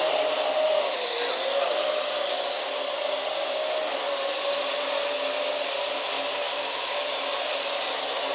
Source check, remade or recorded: recorded